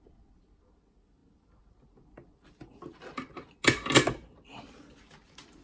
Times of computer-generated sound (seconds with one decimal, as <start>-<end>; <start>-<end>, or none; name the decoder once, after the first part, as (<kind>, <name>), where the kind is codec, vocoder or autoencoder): none